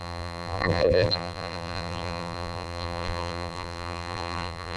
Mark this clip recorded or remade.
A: remade